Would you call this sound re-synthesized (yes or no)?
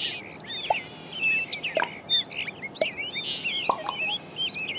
no